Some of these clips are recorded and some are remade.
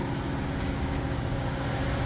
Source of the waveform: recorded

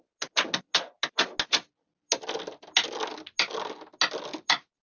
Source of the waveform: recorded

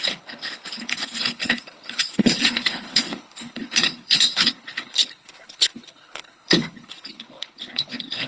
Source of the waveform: remade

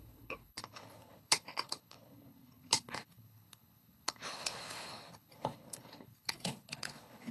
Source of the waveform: remade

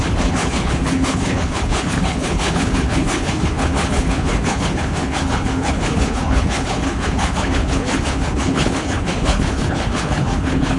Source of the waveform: remade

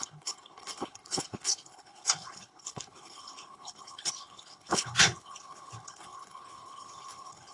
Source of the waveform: remade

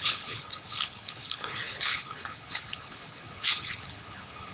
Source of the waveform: remade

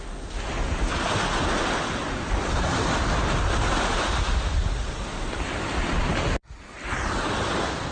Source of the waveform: recorded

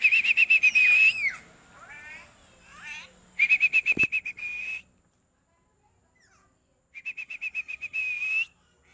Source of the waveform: recorded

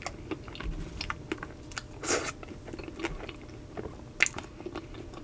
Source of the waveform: recorded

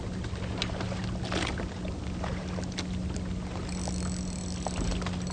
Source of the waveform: recorded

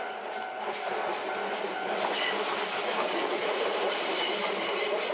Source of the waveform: recorded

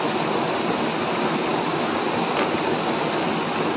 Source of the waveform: recorded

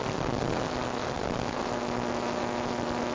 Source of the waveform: recorded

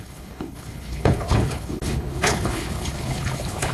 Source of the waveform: remade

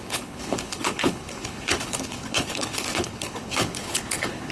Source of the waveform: remade